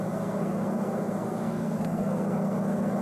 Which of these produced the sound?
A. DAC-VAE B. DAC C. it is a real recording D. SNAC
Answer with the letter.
D